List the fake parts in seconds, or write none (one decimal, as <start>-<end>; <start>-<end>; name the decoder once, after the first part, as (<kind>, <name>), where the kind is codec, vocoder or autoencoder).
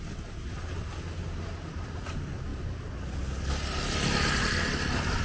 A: none